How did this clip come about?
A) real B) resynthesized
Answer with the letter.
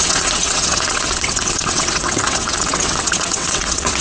B